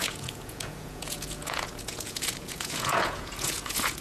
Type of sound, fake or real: fake